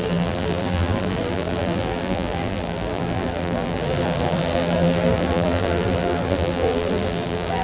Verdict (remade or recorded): remade